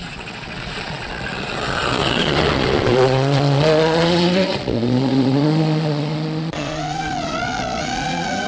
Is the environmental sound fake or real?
fake